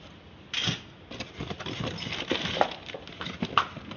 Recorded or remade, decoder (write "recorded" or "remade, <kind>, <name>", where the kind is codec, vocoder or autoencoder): recorded